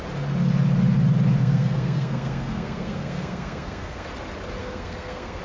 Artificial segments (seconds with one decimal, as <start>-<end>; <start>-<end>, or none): 1.4-4.1; 4.6-5.4